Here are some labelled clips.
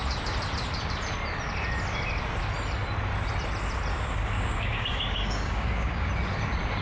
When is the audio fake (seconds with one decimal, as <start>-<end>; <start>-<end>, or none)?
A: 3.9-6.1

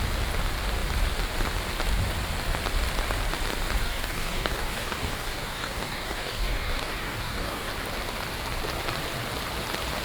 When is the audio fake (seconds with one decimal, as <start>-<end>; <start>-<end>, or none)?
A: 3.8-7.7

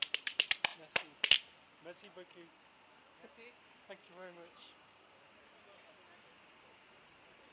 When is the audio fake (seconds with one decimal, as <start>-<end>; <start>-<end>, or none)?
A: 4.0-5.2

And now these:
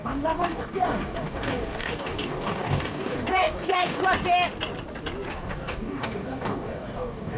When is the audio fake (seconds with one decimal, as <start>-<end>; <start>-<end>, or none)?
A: 0.0-4.0; 5.3-7.4

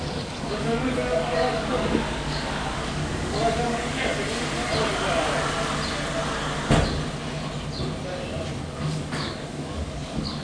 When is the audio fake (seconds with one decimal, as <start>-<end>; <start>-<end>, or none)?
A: 0.0-4.1; 8.6-10.4

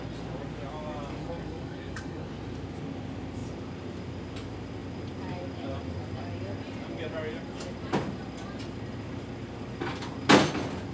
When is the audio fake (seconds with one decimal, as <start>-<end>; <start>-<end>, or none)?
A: 1.2-2.3

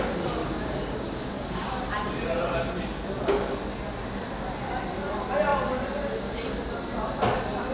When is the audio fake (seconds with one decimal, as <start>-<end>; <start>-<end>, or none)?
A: 0.4-1.8

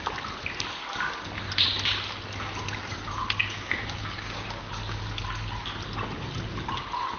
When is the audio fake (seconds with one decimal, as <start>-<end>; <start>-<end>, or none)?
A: 3.4-4.7